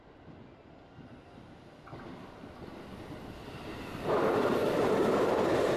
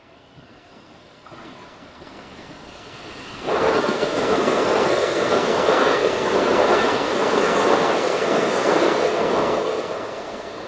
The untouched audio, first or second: first